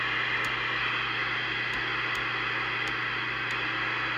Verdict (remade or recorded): recorded